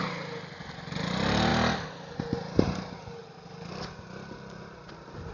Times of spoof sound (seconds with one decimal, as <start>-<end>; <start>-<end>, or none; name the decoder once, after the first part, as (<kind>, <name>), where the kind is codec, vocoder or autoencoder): none